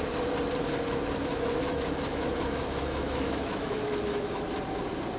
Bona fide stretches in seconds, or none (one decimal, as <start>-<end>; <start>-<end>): 0.0-1.3; 4.4-5.2